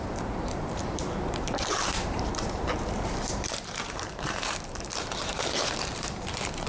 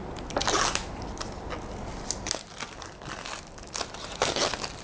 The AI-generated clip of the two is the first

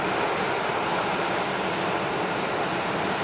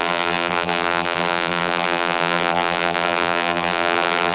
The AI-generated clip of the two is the second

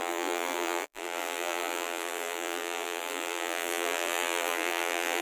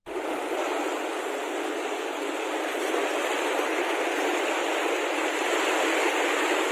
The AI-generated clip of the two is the first